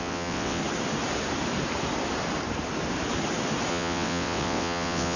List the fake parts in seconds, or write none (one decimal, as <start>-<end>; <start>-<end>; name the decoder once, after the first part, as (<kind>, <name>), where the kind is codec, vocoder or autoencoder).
0.0-0.6 (vocoder, WaveNeXt); 3.7-5.2